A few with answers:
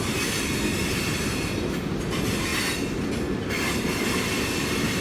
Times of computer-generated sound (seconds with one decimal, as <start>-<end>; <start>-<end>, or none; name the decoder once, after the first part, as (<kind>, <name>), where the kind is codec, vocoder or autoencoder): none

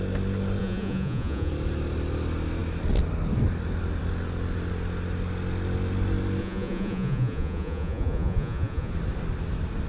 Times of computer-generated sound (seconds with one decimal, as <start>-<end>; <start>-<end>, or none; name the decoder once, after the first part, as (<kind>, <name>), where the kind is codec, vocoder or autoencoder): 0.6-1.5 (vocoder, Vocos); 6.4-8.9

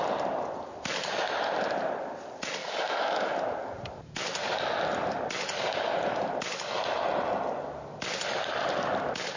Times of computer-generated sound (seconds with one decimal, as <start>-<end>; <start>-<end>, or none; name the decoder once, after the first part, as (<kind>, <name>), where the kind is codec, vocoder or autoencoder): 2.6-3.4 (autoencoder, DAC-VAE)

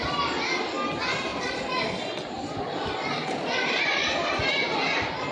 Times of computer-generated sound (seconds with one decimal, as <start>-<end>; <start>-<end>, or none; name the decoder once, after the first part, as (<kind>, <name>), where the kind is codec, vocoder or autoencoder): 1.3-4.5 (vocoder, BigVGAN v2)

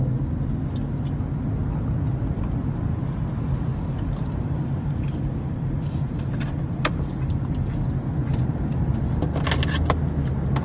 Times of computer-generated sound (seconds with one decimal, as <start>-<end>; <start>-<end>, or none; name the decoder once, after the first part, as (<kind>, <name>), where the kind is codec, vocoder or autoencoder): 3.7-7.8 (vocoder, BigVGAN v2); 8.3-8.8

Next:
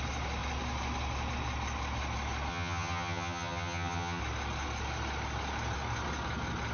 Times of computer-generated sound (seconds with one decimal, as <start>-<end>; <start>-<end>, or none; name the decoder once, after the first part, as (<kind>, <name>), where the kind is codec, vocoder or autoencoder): 2.5-4.2 (vocoder, HiFi-GAN)